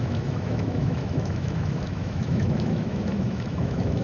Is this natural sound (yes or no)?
no